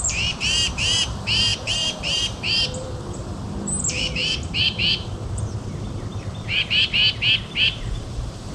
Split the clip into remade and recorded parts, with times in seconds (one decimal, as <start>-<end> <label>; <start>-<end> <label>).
0.0-7.0 remade; 7.0-7.6 recorded; 7.6-8.5 remade